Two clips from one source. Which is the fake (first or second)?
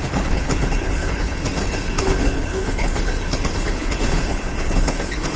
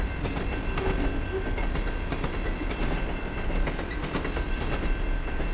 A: first